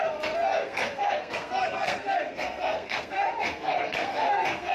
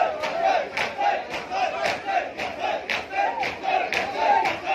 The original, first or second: second